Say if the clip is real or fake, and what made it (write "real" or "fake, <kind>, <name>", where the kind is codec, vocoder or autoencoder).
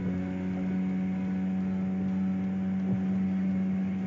real